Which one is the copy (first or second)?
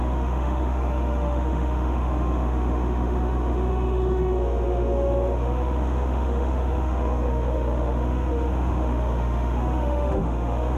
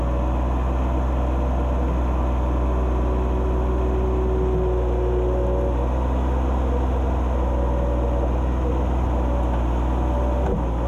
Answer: first